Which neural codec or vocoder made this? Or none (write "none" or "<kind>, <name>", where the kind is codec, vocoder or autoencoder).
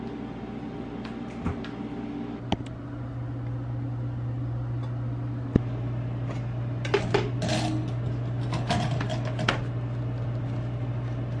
none